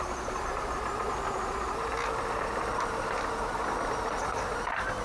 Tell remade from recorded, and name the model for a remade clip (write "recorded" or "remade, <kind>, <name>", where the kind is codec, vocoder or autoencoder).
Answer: recorded